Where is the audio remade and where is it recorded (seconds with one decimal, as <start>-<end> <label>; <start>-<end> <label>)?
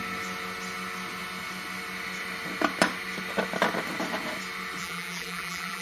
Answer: 0.0-4.8 recorded; 4.8-5.8 remade